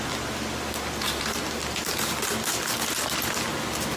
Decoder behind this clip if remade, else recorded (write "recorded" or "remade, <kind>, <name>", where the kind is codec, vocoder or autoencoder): recorded